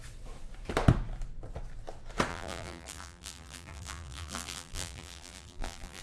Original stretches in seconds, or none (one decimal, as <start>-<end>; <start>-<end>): 0.0-2.3